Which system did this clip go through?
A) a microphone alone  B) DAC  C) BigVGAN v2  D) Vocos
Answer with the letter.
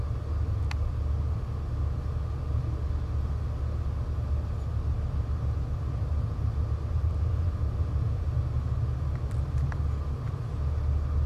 A